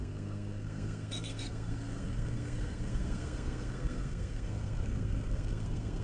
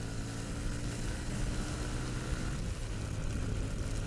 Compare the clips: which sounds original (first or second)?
second